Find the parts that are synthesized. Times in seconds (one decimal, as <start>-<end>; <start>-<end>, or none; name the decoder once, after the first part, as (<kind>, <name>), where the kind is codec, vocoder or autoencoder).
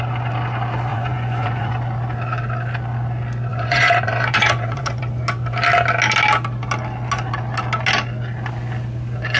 0.9-1.8 (vocoder, Vocos); 3.5-5.0